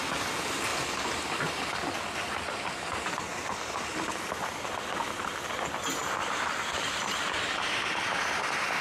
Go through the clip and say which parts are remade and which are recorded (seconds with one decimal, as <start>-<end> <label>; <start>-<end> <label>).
0.0-6.0 recorded; 6.0-7.9 remade; 7.9-8.8 recorded